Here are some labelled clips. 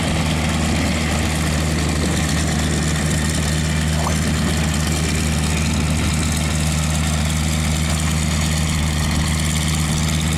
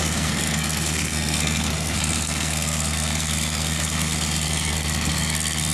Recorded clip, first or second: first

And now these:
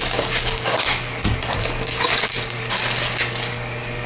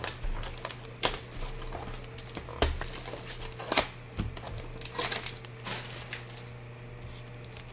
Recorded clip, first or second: second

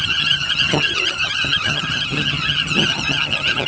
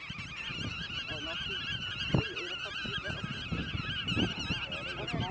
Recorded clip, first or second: second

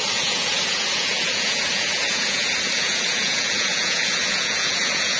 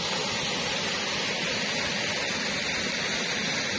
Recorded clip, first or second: second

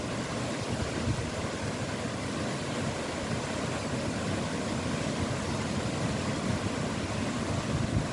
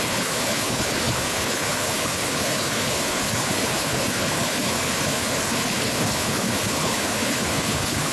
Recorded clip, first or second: first